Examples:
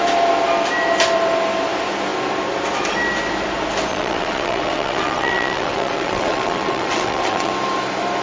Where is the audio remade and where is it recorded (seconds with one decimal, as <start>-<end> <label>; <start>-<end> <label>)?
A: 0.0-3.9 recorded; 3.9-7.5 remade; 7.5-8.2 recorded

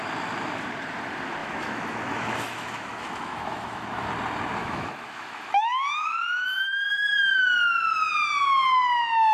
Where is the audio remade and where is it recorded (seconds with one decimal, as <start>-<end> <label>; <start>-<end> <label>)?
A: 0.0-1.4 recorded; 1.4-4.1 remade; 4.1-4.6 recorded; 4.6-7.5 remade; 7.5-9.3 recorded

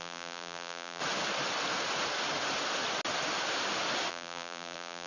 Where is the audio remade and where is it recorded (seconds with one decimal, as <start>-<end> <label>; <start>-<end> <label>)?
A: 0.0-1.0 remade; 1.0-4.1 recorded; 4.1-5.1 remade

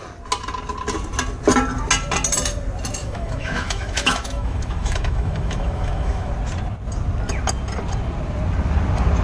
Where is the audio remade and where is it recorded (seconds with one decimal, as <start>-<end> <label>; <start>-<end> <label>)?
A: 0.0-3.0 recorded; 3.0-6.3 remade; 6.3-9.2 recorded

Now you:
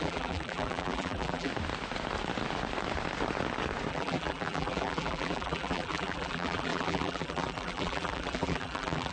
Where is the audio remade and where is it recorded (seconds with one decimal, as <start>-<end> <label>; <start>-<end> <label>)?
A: 0.0-1.5 remade; 1.5-3.9 recorded; 3.9-9.1 remade

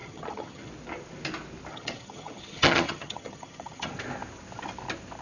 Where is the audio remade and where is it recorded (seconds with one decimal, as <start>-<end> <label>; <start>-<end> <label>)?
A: 0.0-0.7 remade; 0.7-1.7 recorded; 1.7-3.9 remade; 3.9-5.2 recorded

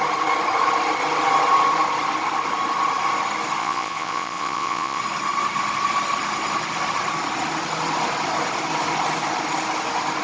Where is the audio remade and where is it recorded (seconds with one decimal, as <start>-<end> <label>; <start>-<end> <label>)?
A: 0.0-3.6 recorded; 3.6-5.0 remade; 5.0-10.2 recorded